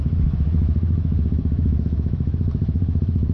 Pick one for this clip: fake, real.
fake